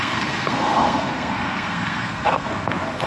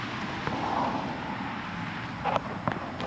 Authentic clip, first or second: second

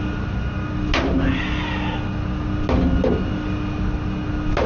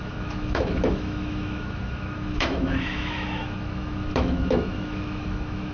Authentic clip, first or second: first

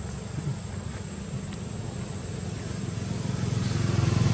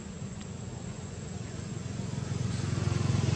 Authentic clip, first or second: first